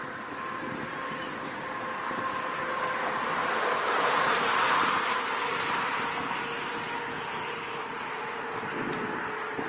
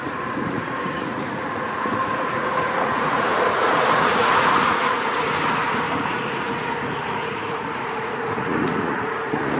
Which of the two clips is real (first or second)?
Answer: first